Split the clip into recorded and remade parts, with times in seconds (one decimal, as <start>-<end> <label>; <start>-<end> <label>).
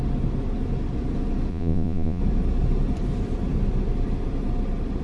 0.0-1.5 recorded; 1.5-2.2 remade; 2.2-5.0 recorded